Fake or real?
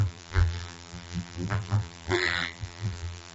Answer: fake